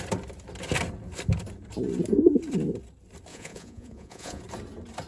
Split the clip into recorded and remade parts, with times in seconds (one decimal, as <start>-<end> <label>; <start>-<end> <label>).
0.0-3.3 recorded; 3.3-4.4 remade; 4.4-5.1 recorded